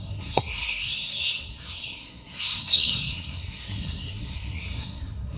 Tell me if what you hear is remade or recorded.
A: remade